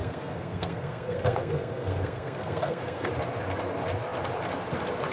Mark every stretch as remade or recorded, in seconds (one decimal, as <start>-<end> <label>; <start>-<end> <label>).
0.0-3.1 remade; 3.1-5.1 recorded